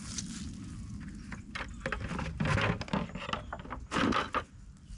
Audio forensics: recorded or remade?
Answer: recorded